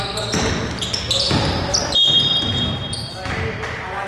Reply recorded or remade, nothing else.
recorded